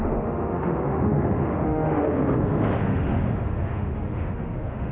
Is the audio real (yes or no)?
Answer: no